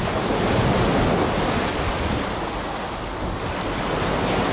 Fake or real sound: real